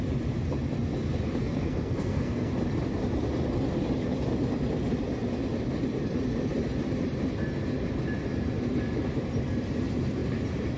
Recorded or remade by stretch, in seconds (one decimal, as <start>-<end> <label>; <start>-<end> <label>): 0.0-1.4 recorded; 1.4-2.5 remade; 2.5-10.8 recorded